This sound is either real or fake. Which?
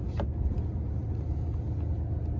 real